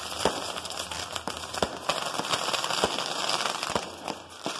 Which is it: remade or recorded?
recorded